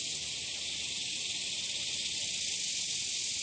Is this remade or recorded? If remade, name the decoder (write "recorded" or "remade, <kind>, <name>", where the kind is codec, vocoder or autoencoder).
recorded